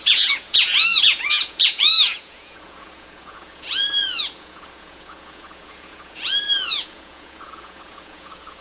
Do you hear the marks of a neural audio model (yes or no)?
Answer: yes